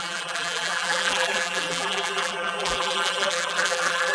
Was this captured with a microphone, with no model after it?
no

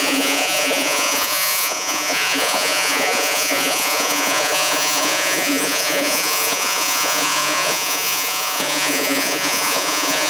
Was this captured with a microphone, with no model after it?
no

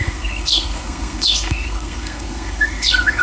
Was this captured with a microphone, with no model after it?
no